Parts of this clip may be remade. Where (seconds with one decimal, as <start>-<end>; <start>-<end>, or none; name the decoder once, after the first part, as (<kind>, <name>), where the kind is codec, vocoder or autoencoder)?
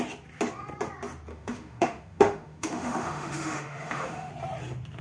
1.3-4.3 (autoencoder, DAC-VAE)